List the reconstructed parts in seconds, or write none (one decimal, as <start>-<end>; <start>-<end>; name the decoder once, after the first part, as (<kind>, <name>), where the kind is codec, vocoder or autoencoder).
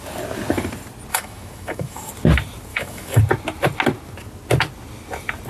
1.1-2.1 (autoencoder, DAC-VAE); 2.7-3.2